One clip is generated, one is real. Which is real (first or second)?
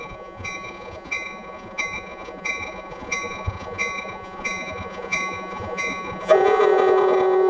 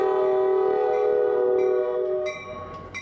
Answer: second